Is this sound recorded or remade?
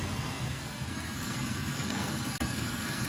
remade